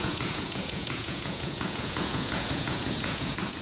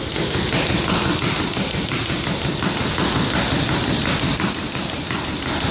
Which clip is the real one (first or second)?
second